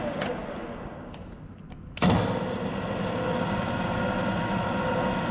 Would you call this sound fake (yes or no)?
no